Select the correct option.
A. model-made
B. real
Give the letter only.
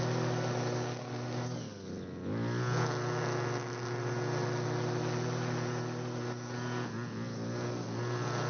B